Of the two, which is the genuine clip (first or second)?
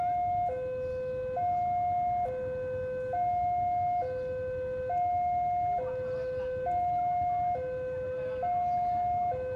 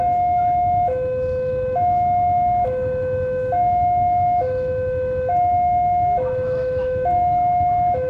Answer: first